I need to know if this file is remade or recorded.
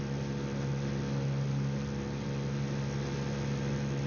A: recorded